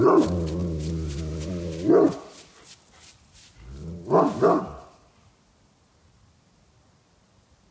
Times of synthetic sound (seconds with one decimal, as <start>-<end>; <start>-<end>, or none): none